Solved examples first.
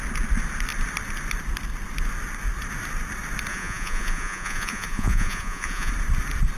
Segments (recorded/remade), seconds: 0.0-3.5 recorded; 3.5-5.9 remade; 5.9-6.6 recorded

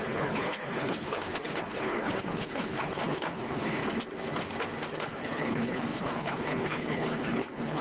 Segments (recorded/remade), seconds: 0.0-3.8 remade; 3.8-4.9 recorded; 4.9-7.8 remade

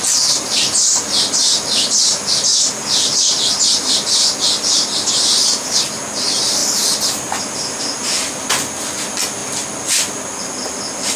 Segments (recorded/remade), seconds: 0.0-11.2 recorded